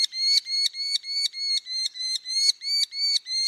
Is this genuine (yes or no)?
yes